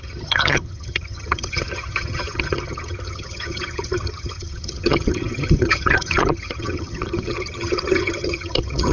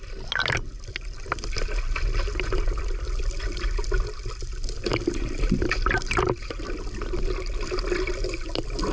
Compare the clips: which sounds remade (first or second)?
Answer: first